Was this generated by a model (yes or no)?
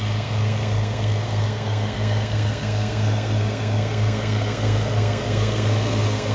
yes